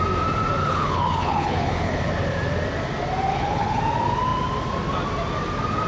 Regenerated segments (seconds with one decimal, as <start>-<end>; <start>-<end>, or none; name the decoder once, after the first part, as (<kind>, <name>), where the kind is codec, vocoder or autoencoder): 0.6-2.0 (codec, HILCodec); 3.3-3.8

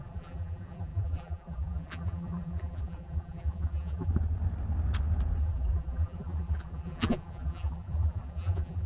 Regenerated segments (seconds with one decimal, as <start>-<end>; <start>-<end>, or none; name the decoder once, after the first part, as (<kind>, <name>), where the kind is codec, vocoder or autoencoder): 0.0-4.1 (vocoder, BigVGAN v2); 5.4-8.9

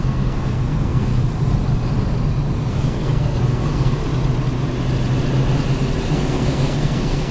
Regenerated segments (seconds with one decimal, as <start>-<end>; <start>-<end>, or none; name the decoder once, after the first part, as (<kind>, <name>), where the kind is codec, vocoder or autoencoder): 0.0-1.1 (codec, SNAC); 2.7-4.0; 6.1-7.3

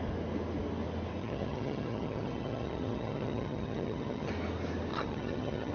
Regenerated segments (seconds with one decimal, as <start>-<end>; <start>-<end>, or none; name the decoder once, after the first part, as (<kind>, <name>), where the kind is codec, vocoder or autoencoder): 1.2-4.3 (vocoder, HiFi-GAN); 4.9-5.7

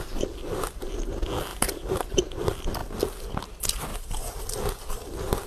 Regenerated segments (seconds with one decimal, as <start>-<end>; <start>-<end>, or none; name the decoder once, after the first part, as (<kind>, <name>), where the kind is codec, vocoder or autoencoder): 1.5-2.2 (vocoder, BigVGAN v2); 3.9-4.4

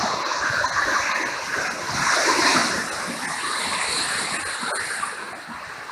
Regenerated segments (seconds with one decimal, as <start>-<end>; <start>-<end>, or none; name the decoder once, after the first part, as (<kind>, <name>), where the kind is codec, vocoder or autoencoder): none

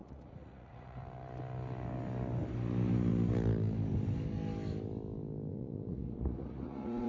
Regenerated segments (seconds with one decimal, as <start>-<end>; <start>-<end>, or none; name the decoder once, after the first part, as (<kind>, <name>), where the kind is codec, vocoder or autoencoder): 0.0-1.0 (vocoder, Vocos); 5.5-7.1